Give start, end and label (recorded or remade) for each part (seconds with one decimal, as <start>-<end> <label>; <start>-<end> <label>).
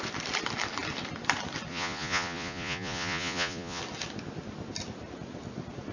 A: 0.0-1.7 recorded; 1.7-3.8 remade; 3.8-5.9 recorded